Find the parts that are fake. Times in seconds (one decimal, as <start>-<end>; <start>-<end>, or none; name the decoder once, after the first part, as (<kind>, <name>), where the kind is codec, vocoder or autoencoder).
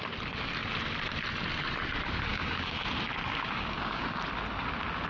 2.3-2.9 (codec, DAC); 3.3-4.3